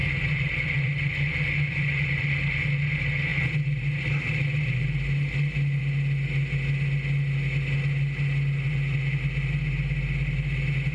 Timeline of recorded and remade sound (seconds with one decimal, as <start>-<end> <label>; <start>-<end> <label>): 0.0-1.1 remade; 1.1-10.9 recorded